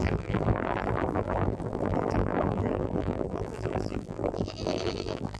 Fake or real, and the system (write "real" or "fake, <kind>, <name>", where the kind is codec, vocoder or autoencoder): fake, vocoder, BigVGAN v2